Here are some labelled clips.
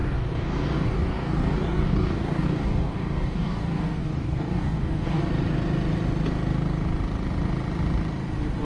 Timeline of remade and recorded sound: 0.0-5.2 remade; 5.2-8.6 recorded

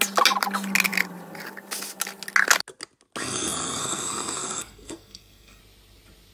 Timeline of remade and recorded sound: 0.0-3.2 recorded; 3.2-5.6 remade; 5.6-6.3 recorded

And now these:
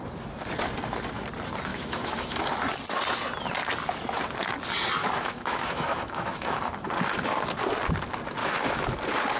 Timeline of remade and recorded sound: 0.0-1.7 recorded; 1.7-2.4 remade; 2.4-5.0 recorded; 5.0-6.6 remade; 6.6-8.4 recorded; 8.4-9.0 remade; 9.0-9.4 recorded

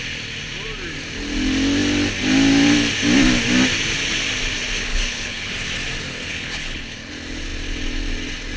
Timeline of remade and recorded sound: 0.0-4.9 recorded; 4.9-5.5 remade; 5.5-6.3 recorded; 6.3-7.1 remade; 7.1-8.6 recorded

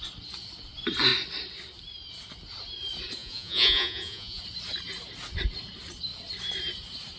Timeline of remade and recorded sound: 0.0-3.2 recorded; 3.2-4.4 remade; 4.4-7.2 recorded

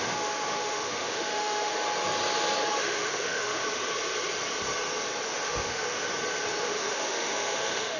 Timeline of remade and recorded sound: 0.0-1.7 remade; 1.7-2.7 recorded; 2.7-3.6 remade; 3.6-5.2 recorded; 5.2-6.1 remade; 6.1-6.6 recorded; 6.6-8.0 remade